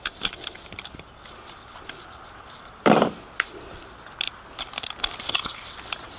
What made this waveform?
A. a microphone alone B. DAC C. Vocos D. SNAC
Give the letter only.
A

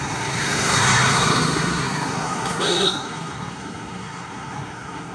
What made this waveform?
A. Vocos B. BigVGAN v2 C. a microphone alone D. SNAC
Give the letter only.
D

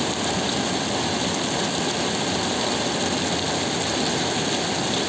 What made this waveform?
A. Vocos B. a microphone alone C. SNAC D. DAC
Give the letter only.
B